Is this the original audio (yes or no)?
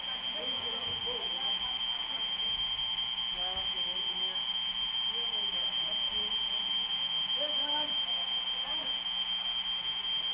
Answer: yes